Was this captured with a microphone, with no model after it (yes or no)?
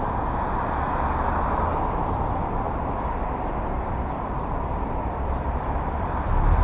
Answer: no